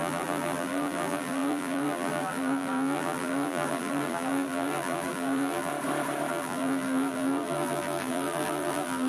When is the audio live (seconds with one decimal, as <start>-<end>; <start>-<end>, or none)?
5.7-6.3